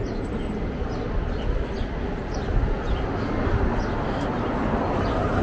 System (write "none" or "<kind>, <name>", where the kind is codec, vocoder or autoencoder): none